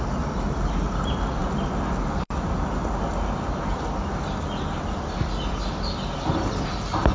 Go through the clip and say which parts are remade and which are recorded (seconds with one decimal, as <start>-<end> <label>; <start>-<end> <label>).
0.0-7.1 recorded